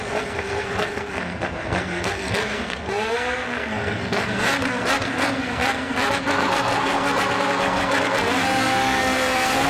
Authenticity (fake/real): fake